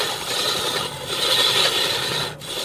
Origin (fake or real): real